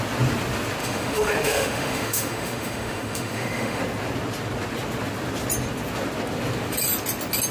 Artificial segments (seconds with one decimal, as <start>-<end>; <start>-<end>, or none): 0.8-3.8